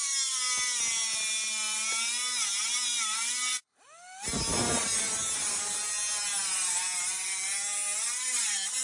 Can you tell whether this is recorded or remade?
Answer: recorded